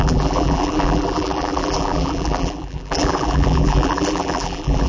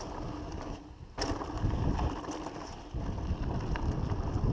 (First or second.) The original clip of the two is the second